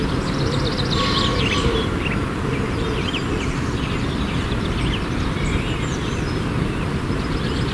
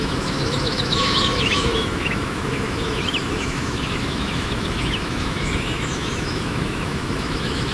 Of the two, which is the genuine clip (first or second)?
first